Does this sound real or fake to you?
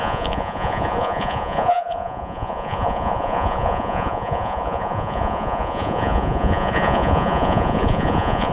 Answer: fake